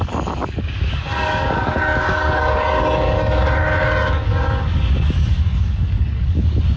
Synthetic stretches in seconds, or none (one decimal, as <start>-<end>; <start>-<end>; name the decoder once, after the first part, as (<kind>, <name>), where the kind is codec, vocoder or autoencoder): 0.0-6.8 (codec, DAC)